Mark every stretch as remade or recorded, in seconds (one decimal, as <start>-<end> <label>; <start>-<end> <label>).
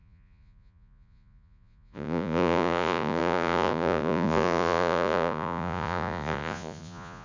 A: 0.0-7.2 remade